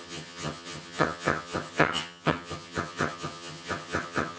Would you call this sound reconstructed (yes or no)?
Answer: yes